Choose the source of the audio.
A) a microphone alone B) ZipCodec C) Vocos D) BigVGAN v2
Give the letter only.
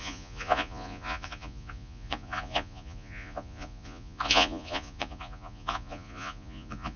C